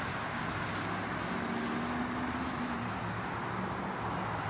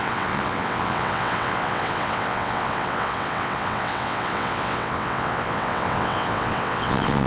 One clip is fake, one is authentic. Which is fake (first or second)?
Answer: second